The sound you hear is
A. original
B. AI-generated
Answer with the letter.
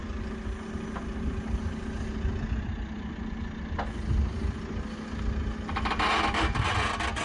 A